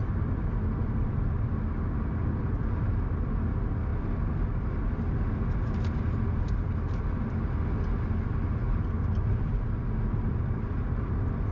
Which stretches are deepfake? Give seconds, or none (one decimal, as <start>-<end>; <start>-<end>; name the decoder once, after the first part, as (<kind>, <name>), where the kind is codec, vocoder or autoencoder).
none